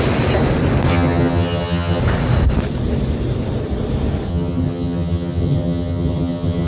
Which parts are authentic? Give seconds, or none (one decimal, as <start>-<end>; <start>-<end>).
0.0-0.9; 2.0-4.3